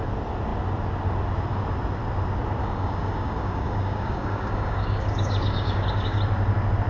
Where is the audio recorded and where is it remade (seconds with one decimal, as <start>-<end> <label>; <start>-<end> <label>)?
0.0-2.6 recorded; 2.6-6.2 remade; 6.2-6.9 recorded